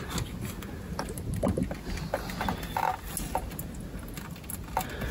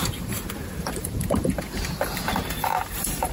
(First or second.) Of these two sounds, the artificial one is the second